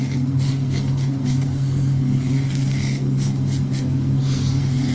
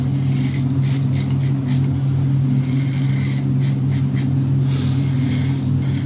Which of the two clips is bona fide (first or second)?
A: second